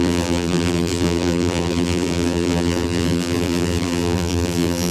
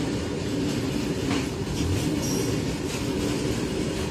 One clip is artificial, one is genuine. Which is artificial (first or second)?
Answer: first